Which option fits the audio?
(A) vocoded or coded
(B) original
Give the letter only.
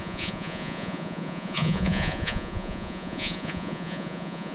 A